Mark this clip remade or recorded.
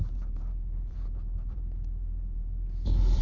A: remade